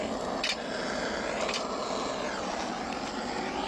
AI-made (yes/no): no